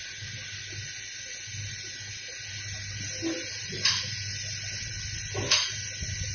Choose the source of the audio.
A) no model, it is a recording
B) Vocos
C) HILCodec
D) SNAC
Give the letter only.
A